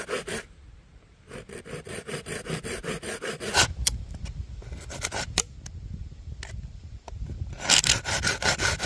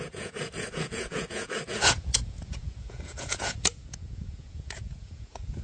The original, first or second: first